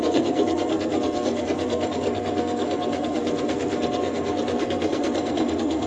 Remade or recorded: remade